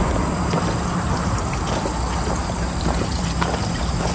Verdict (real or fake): real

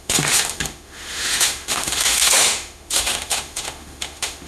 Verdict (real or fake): fake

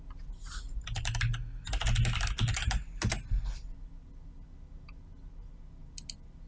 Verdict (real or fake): real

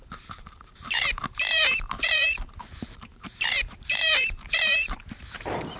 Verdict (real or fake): fake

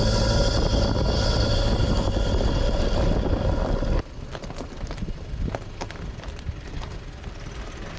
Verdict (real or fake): real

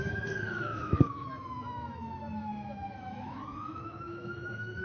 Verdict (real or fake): fake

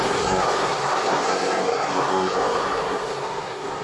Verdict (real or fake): fake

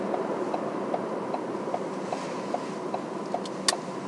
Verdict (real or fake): real